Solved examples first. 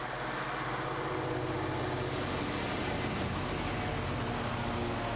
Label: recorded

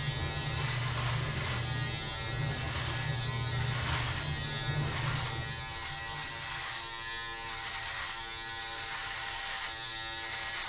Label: recorded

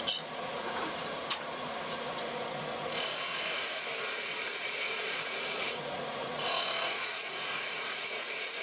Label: remade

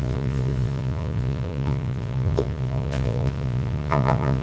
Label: remade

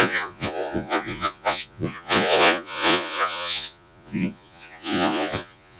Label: remade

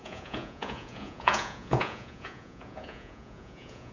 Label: remade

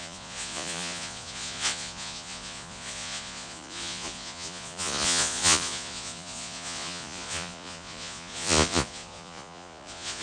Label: remade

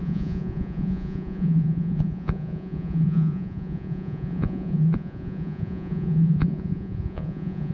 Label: remade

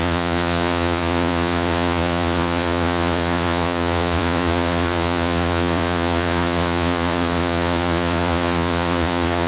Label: remade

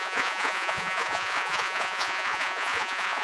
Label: remade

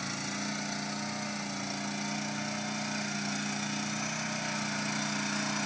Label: recorded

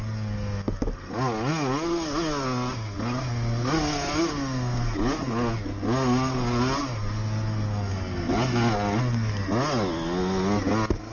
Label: recorded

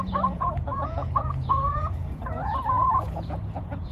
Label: remade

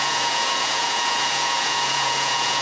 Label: remade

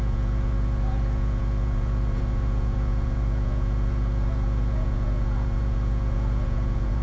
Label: remade